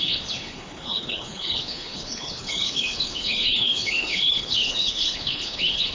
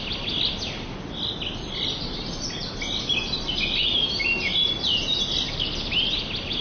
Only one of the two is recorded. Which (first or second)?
second